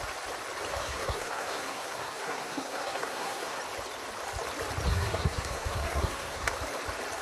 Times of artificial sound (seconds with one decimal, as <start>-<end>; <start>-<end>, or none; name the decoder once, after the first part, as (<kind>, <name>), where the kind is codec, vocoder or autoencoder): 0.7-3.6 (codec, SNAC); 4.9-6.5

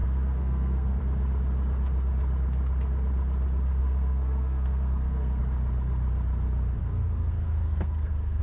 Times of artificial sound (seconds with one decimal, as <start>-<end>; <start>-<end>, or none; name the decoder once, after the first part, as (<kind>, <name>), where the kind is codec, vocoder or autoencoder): 0.0-1.0 (codec, SNAC); 3.8-5.4; 6.8-8.4

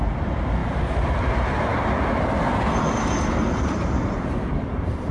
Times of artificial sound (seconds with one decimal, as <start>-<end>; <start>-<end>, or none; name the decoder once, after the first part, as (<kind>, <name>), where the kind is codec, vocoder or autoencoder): none

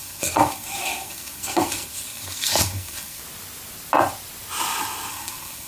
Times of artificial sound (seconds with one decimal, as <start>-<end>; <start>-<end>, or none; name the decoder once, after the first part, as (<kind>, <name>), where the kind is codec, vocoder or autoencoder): 0.0-3.2 (codec, SNAC); 5.1-5.7

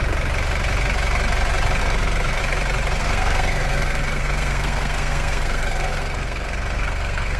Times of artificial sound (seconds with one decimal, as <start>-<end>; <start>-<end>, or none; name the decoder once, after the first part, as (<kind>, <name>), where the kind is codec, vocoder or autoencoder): 1.8-2.4 (codec, SNAC); 3.0-7.4

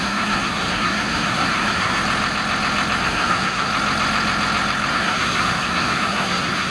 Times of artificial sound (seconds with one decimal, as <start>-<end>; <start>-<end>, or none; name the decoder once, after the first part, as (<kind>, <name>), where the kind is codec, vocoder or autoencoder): 0.0-2.0 (codec, SNAC); 3.0-3.7; 4.9-6.7

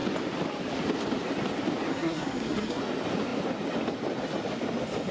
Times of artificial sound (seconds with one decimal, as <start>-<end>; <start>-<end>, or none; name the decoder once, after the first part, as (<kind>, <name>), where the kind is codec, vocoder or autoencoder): 1.9-2.8 (codec, SNAC)